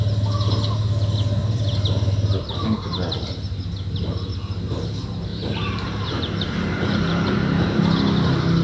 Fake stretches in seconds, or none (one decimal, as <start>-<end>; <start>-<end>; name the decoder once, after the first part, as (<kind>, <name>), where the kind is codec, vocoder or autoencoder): 1.4-2.1 (vocoder, BigVGAN v2); 5.3-7.8